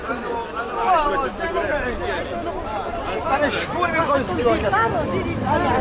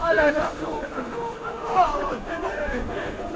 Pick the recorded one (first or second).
first